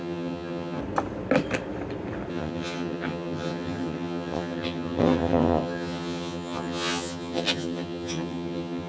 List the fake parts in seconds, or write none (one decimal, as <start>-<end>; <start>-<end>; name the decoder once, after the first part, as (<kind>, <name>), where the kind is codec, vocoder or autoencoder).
0.0-0.8 (vocoder, HiFi-GAN); 2.3-8.9